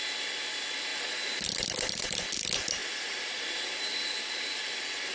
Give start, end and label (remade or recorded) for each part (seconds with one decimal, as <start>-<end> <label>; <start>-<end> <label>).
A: 0.0-2.8 recorded; 2.8-4.0 remade; 4.0-5.1 recorded